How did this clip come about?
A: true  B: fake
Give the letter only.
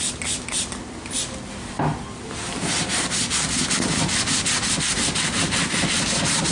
A